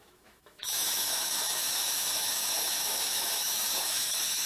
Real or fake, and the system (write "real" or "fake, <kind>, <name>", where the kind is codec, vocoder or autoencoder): fake, autoencoder, DAC-VAE